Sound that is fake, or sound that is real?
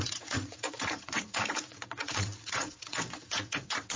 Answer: fake